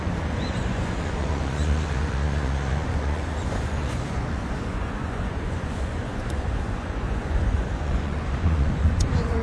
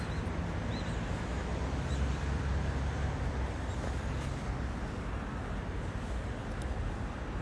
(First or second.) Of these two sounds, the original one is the second